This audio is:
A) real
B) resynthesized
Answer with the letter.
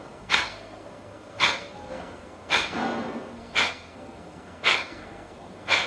B